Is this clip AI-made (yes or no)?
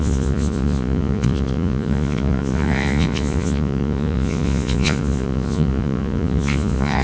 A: yes